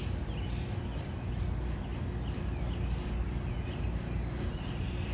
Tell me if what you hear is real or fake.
real